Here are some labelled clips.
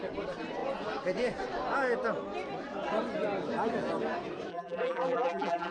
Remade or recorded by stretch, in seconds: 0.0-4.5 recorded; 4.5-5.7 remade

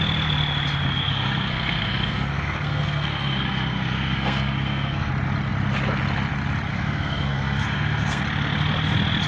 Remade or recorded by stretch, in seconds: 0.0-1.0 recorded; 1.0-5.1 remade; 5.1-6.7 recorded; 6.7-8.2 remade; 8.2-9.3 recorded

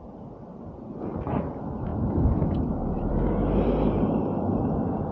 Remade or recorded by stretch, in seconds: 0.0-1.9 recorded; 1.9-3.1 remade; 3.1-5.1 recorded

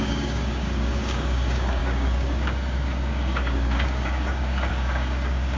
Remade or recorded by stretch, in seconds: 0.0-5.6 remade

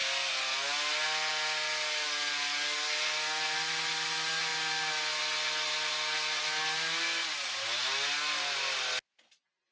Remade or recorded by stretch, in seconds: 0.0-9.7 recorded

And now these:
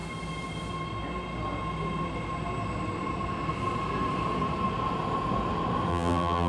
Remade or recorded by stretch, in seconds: 0.0-5.9 recorded; 5.9-6.5 remade